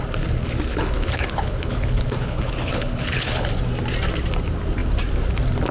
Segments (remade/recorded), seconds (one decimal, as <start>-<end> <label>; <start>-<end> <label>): 0.0-0.7 recorded; 0.7-3.5 remade; 3.5-5.7 recorded